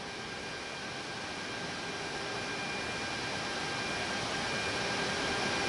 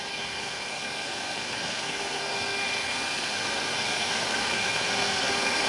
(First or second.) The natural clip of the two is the first